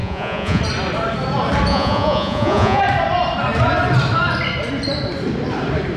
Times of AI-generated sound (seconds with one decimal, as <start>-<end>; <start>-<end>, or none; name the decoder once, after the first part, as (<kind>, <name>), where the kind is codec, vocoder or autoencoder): 0.0-0.6 (vocoder, Vocos); 1.7-2.8